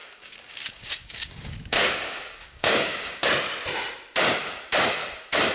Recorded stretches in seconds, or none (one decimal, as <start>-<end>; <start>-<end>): 3.3-5.5